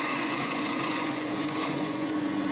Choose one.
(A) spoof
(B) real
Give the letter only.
A